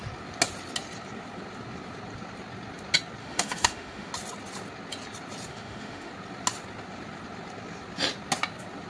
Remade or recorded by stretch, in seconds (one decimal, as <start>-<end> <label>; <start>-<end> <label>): 0.0-3.2 recorded; 3.2-4.1 remade; 4.1-5.5 recorded; 5.5-6.1 remade; 6.1-8.9 recorded